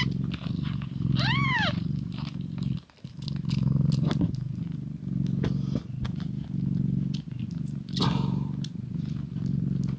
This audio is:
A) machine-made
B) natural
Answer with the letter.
B